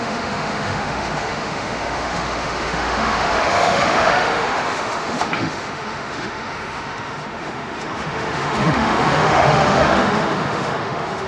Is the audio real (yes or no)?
no